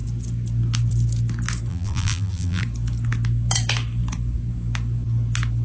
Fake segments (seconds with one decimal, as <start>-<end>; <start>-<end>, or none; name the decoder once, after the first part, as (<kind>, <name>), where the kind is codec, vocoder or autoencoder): 1.7-2.6 (vocoder, BigVGAN v2)